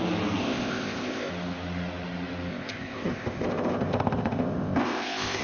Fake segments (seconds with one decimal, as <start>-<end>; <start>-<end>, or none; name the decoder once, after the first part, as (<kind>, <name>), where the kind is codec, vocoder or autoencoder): 0.4-1.3 (codec, ZipCodec); 2.5-5.4